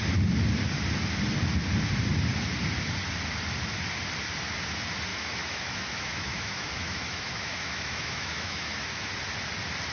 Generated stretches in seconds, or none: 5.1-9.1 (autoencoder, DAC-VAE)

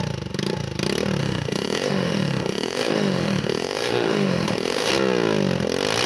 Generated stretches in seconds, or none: 1.2-4.9 (autoencoder, DAC-VAE)

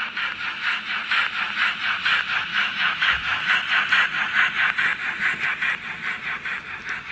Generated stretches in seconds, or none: 2.5-3.5 (autoencoder, DAC-VAE)

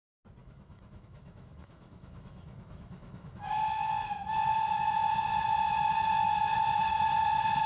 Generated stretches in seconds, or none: 0.4-3.9 (autoencoder, DAC-VAE)

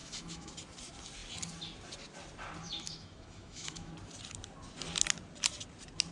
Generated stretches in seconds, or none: 0.0-0.5 (autoencoder, DAC-VAE); 2.6-3.9

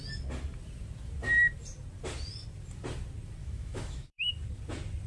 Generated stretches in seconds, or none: 3.4-4.3 (autoencoder, DAC-VAE)